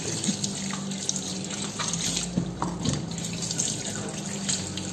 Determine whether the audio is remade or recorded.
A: recorded